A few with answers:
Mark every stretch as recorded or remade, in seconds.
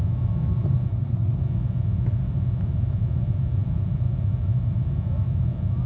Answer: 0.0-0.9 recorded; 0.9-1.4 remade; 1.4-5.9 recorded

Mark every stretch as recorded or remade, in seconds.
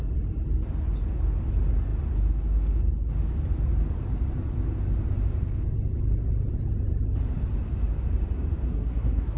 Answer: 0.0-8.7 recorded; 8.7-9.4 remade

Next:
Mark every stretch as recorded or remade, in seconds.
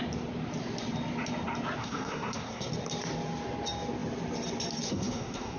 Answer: 0.0-1.8 recorded; 1.8-2.7 remade; 2.7-4.9 recorded; 4.9-5.6 remade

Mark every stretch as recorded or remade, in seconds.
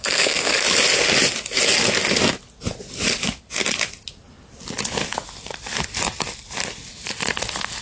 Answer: 0.0-0.6 remade; 0.6-7.8 recorded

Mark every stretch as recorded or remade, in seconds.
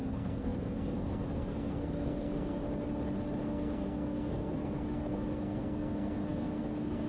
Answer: 0.0-2.6 remade; 2.6-3.4 recorded; 3.4-7.1 remade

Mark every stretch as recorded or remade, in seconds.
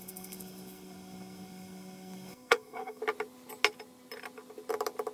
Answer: 0.0-3.0 remade; 3.0-5.1 recorded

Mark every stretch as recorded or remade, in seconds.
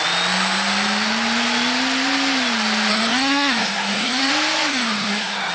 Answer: 0.0-2.9 recorded; 2.9-4.3 remade; 4.3-4.7 recorded; 4.7-5.5 remade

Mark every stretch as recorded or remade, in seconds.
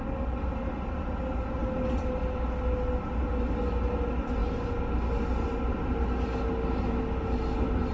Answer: 0.0-7.9 recorded